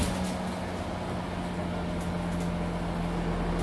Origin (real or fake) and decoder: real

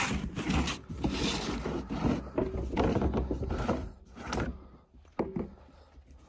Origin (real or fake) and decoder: real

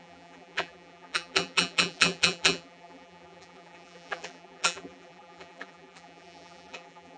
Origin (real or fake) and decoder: fake, vocoder, BigVGAN v2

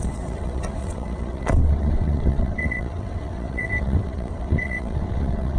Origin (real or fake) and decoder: fake, vocoder, WaveNeXt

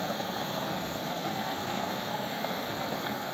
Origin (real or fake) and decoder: fake, codec, SNAC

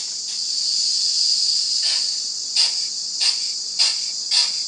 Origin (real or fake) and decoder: fake, vocoder, Vocos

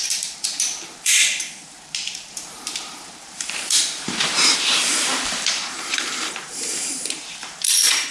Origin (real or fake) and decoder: fake, vocoder, BigVGAN v2